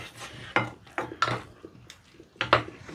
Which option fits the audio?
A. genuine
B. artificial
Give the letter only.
A